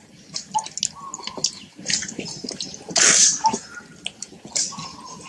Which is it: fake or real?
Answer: real